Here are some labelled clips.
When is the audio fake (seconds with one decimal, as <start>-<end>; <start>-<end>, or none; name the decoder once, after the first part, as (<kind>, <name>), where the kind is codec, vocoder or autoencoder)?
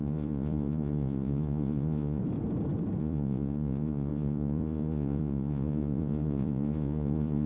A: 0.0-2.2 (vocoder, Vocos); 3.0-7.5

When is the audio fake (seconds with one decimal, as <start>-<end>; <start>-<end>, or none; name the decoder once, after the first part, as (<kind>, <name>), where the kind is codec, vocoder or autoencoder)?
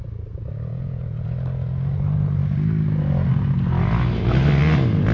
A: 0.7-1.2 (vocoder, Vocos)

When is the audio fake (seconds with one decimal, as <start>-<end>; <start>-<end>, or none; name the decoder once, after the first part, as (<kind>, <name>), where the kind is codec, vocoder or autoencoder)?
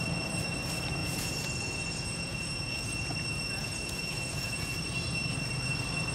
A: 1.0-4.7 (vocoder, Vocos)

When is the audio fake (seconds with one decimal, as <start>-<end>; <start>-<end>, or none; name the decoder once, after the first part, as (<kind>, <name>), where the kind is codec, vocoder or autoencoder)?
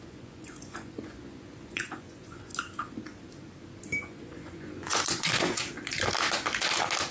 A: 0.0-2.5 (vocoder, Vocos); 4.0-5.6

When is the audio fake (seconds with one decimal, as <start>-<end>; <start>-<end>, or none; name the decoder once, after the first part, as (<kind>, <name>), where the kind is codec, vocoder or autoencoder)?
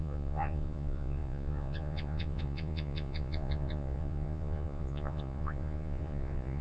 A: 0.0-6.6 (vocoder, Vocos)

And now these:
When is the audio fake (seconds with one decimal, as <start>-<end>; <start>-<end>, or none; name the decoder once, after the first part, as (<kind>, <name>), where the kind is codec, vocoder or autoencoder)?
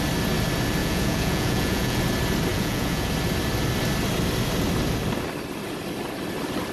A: 0.8-2.0 (vocoder, Vocos); 2.5-3.1